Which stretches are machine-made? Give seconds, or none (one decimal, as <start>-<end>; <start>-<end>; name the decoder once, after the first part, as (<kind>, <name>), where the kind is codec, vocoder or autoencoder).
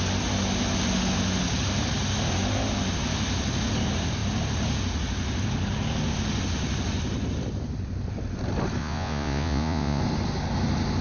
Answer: 8.8-10.0 (vocoder, Vocos)